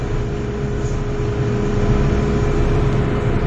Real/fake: real